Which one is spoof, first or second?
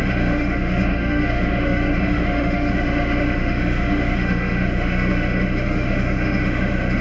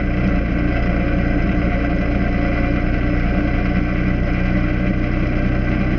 first